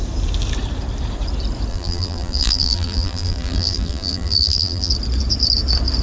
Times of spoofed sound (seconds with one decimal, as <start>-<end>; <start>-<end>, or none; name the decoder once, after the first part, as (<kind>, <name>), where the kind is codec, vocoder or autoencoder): 1.7-4.9 (vocoder, BigVGAN v2)